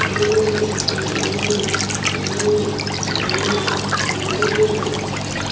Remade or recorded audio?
recorded